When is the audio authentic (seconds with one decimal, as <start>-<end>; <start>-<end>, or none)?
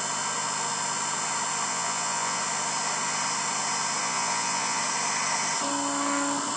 0.0-1.7; 2.4-4.0; 4.8-6.6